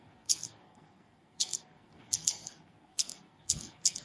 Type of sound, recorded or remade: remade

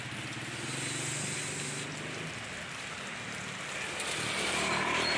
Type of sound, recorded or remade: remade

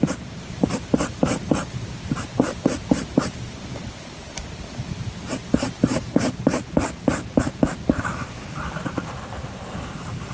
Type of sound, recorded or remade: remade